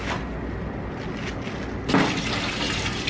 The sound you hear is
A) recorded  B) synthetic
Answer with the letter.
A